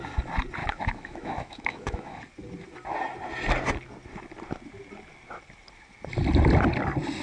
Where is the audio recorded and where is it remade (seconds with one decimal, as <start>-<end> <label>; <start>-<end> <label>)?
0.0-0.6 recorded; 0.6-2.2 remade; 2.2-7.2 recorded